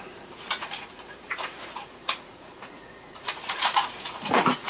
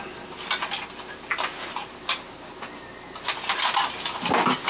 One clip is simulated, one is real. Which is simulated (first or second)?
first